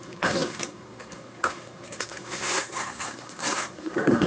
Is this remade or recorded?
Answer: remade